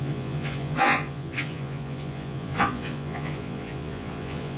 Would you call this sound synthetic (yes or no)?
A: yes